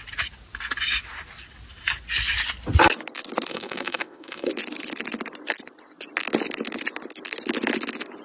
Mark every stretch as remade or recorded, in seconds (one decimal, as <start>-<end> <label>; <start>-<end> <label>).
0.0-3.5 recorded; 3.5-4.5 remade; 4.5-8.2 recorded